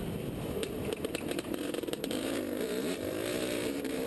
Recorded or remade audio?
remade